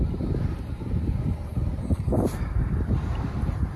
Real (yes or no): no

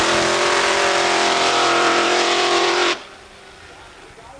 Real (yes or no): no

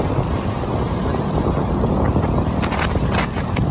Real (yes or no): yes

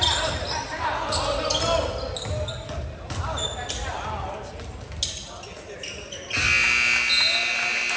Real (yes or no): yes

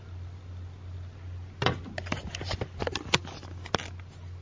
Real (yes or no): yes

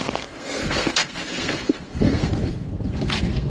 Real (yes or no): no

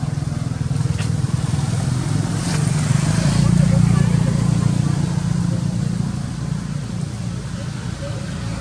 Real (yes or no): yes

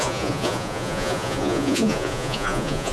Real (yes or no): no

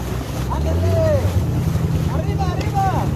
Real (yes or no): yes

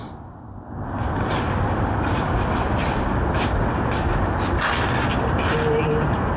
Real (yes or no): yes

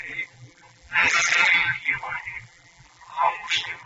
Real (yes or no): no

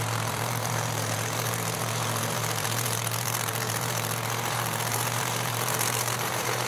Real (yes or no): no